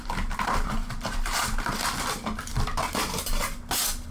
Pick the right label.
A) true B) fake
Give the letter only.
A